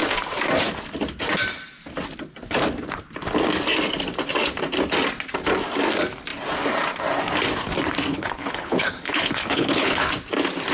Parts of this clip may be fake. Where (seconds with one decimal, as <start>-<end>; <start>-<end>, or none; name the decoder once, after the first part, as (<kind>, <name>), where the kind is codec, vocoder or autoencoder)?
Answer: 8.1-10.1 (codec, HILCodec)

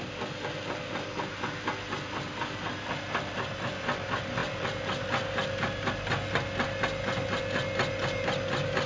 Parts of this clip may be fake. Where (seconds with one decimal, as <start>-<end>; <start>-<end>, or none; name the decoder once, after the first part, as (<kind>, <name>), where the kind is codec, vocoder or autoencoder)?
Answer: none

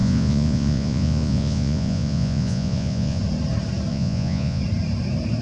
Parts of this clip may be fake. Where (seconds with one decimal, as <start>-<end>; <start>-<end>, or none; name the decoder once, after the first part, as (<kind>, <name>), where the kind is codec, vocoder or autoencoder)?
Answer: 0.0-3.2 (vocoder, Vocos); 3.9-4.6

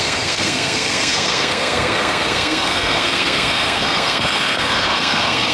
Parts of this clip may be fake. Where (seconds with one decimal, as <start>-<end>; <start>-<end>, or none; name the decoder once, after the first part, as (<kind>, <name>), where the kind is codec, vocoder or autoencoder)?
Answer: 0.0-5.5 (codec, SNAC)

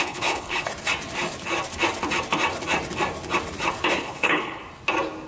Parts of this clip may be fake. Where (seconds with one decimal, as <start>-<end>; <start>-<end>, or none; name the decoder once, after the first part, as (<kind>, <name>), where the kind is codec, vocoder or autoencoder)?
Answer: 0.0-0.7 (codec, HILCodec); 3.9-4.6

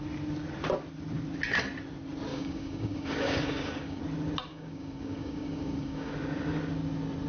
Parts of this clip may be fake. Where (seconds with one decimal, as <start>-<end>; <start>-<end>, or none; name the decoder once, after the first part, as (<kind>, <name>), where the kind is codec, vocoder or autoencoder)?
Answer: 2.3-4.0 (codec, DAC); 4.5-6.1

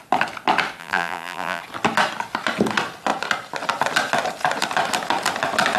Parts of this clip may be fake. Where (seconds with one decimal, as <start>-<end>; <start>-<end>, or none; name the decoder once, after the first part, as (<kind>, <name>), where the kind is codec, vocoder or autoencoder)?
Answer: 0.8-1.6 (vocoder, BigVGAN v2)